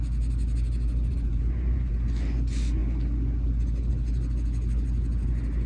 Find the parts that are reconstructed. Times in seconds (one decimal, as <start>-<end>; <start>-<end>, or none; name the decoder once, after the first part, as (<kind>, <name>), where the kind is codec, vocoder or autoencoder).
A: 1.1-1.9 (vocoder, BigVGAN v2)